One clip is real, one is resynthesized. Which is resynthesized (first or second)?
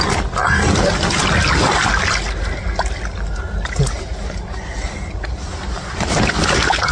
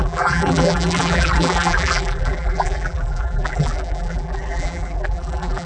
second